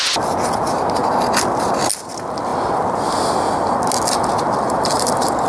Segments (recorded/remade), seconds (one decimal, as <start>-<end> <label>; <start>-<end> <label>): 0.0-5.5 recorded